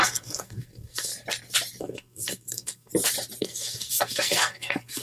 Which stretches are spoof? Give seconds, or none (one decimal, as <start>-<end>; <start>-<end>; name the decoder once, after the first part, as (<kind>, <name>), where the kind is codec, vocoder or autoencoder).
0.0-1.1 (codec, SNAC); 1.8-2.9; 3.4-5.0